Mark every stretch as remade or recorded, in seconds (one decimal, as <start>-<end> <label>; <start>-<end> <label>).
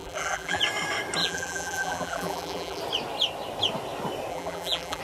0.0-0.6 remade; 0.6-1.2 recorded; 1.2-2.8 remade; 2.8-4.3 recorded; 4.3-5.0 remade